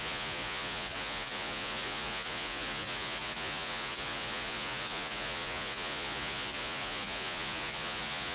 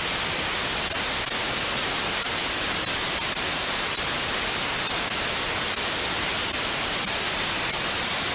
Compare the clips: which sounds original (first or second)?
second